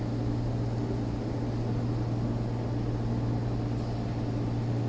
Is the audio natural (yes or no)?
yes